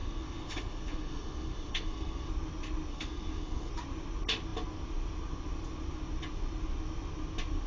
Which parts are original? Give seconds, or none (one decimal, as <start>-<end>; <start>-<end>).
2.3-2.9; 3.7-7.7